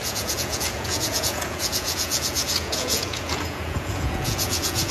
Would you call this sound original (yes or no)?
no